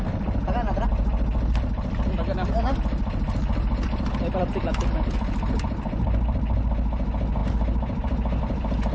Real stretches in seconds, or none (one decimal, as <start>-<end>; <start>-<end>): 0.0-8.9

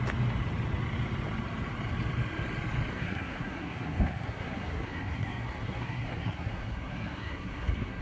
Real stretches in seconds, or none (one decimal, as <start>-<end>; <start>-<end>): 0.0-2.9

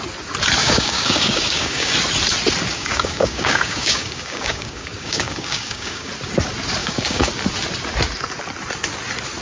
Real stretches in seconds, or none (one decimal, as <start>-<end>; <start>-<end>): 0.0-0.6; 1.9-2.7; 6.1-6.8; 7.3-9.4

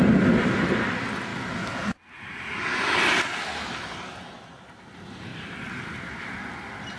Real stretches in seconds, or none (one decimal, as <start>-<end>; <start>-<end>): 0.0-7.0

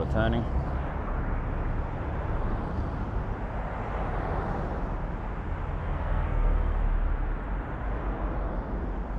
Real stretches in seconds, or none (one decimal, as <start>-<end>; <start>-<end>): 0.0-5.8; 6.8-9.2

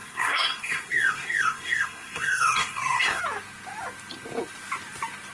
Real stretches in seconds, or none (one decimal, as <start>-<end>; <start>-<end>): 3.2-5.3

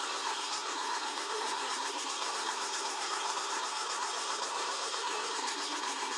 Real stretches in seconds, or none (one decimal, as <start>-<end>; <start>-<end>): none